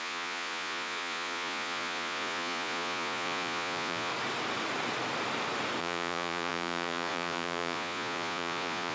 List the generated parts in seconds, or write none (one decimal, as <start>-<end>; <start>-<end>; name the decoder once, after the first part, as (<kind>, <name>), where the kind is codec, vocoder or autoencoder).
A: 0.0-4.1 (vocoder, Vocos); 5.8-8.9